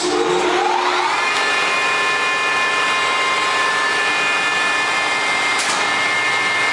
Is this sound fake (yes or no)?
no